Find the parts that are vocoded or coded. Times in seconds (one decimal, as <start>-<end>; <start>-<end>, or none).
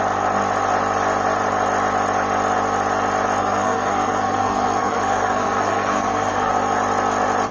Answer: 3.4-6.5